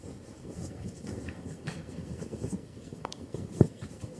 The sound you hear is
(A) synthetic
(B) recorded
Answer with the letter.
A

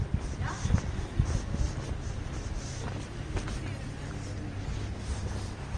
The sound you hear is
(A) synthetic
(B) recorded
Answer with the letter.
B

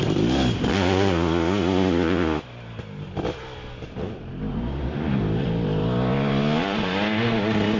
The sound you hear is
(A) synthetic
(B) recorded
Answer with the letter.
B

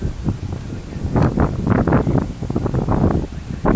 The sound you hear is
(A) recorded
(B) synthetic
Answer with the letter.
A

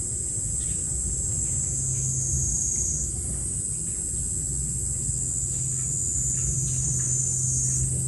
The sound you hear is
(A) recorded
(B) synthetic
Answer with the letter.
A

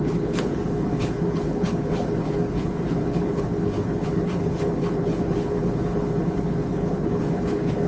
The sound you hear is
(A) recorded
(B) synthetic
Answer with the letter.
B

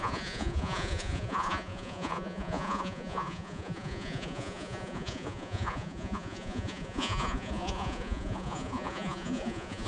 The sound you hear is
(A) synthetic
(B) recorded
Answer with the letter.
A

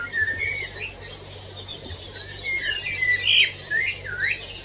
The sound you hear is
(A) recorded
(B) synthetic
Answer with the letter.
A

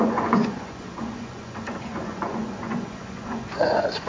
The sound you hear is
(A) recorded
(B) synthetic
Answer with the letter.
B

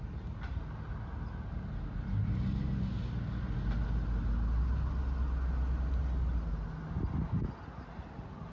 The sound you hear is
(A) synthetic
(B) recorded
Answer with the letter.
B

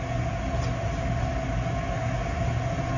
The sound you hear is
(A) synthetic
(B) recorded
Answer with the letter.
B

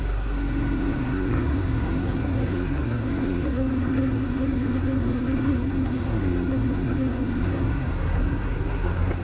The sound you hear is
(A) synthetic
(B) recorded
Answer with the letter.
A